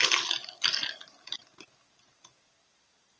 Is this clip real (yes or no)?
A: yes